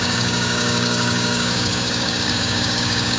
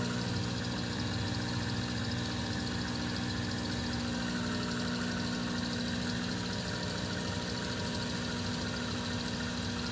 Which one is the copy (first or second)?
first